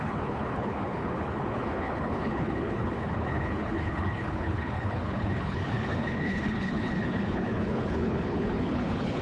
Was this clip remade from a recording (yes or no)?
yes